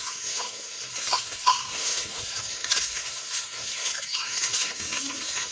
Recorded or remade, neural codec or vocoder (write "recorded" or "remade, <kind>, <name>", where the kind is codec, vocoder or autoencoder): remade, codec, SNAC